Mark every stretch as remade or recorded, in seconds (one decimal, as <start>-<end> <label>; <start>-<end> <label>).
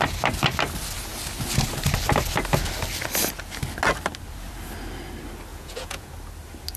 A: 0.0-5.5 recorded; 5.5-6.1 remade; 6.1-6.8 recorded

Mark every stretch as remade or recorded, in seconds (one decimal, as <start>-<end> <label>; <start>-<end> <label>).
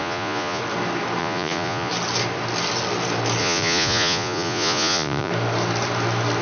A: 0.0-0.6 remade; 0.6-1.2 recorded; 1.2-1.9 remade; 1.9-3.4 recorded; 3.4-5.3 remade; 5.3-6.4 recorded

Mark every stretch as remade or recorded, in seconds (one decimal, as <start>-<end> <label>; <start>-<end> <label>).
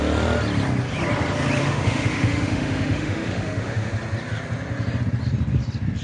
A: 0.0-1.6 recorded; 1.6-3.9 remade; 3.9-6.0 recorded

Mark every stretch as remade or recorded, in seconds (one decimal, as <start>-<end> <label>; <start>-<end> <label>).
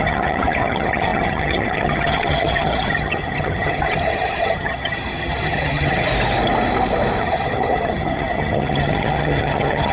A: 0.0-6.1 remade; 6.1-7.2 recorded; 7.2-9.9 remade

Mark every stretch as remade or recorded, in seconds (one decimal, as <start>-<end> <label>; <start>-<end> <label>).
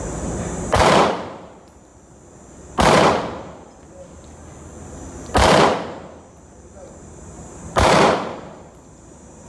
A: 0.0-1.9 remade; 1.9-6.4 recorded; 6.4-9.5 remade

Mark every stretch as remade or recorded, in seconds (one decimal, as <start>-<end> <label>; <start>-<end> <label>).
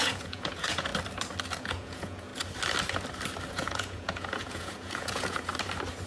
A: 0.0-0.9 remade; 0.9-1.6 recorded; 1.6-2.3 remade; 2.3-3.5 recorded; 3.5-5.5 remade; 5.5-6.1 recorded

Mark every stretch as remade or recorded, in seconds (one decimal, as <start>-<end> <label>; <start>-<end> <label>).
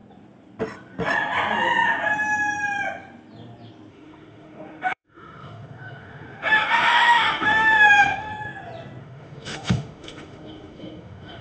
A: 0.0-3.9 recorded; 3.9-8.3 remade; 8.3-9.0 recorded; 9.0-11.4 remade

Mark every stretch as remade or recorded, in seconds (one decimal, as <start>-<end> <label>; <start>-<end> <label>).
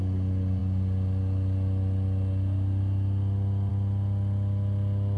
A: 0.0-5.2 recorded